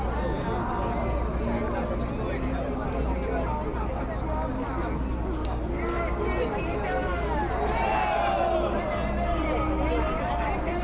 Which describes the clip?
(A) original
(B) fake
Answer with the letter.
A